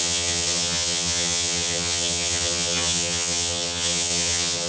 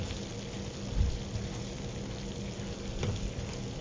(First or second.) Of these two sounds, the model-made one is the first